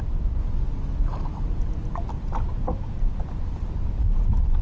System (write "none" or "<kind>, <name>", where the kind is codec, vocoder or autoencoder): none